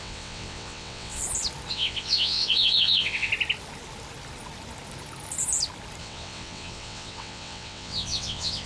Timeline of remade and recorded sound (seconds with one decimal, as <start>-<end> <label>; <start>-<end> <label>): 0.0-1.2 remade; 1.2-1.7 recorded; 1.7-3.3 remade; 3.3-6.0 recorded; 6.0-8.7 remade